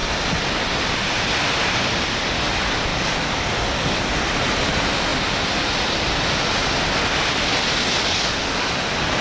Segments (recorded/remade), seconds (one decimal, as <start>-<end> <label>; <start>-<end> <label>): 0.0-2.9 recorded; 2.9-4.0 remade; 4.0-8.0 recorded; 8.0-8.7 remade; 8.7-9.2 recorded